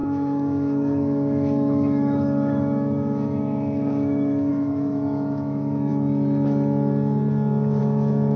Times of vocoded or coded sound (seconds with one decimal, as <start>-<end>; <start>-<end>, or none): 0.0-5.9; 7.8-8.4

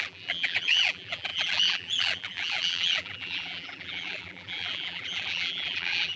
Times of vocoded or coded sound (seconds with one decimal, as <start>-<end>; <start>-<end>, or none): 0.0-6.2

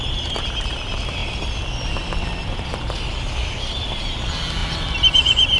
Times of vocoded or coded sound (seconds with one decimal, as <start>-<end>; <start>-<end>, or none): none

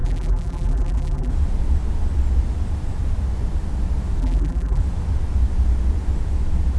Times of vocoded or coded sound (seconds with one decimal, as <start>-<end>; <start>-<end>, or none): 0.0-1.3; 4.2-4.8

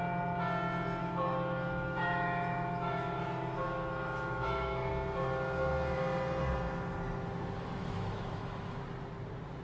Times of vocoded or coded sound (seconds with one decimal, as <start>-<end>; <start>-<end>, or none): 1.0-4.9; 7.8-8.8

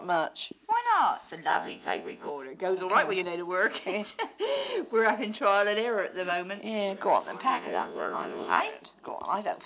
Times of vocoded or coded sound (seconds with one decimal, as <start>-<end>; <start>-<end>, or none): 1.5-2.3; 7.5-8.6